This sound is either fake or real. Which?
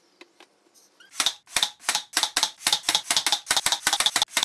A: real